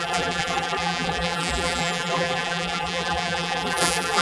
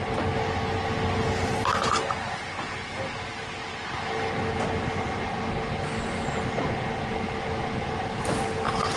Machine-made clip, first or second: first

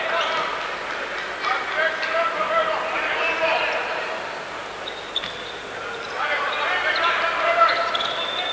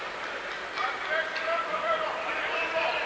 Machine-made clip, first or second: second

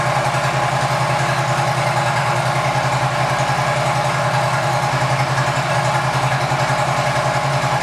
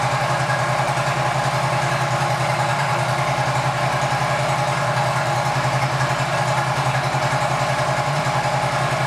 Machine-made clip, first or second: second